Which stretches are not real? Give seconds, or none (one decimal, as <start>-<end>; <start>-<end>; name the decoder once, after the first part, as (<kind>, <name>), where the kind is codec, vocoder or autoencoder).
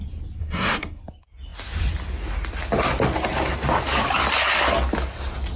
0.4-1.0 (codec, SNAC)